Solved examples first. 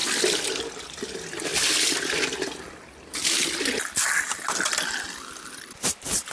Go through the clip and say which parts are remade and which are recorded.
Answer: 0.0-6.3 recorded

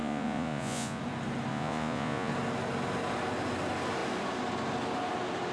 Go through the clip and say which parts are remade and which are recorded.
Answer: 0.0-1.0 remade; 1.0-1.5 recorded; 1.5-2.3 remade; 2.3-5.5 recorded

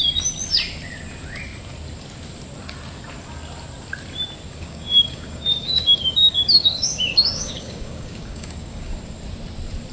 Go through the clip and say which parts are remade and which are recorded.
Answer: 0.0-4.5 recorded; 4.5-8.9 remade; 8.9-9.9 recorded

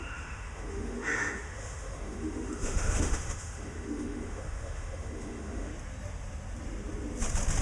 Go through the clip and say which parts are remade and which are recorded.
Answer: 0.0-5.7 remade; 5.7-7.6 recorded